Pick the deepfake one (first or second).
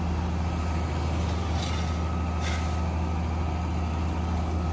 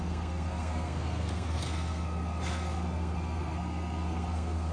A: second